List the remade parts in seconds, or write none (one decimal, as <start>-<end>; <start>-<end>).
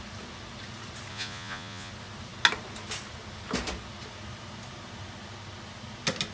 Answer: 1.1-1.9